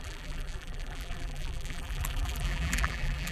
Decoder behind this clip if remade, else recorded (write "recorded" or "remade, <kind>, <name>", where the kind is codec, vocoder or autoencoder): remade, vocoder, BigVGAN v2